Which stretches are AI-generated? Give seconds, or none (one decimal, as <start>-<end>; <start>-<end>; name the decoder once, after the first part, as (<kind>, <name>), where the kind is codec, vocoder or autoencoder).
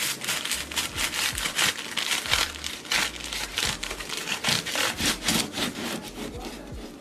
3.5-6.0 (vocoder, BigVGAN v2)